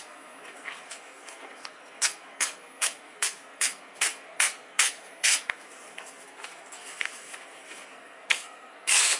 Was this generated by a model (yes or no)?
yes